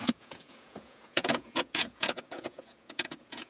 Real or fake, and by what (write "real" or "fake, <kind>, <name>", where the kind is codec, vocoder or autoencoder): fake, vocoder, Vocos